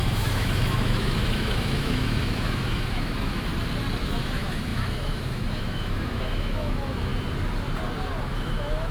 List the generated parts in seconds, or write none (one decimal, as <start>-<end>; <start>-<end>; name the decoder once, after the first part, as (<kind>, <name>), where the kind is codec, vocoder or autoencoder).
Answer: 0.0-3.5 (autoencoder, DAC-VAE); 4.0-7.1; 8.2-8.9